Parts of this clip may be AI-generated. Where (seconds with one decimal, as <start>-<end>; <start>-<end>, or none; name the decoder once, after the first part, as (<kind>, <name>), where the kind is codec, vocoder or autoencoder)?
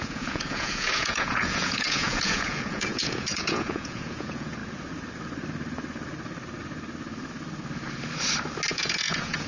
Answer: 0.0-4.6 (vocoder, Vocos); 8.7-9.5